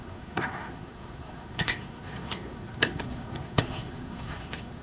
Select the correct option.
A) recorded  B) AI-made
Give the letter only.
B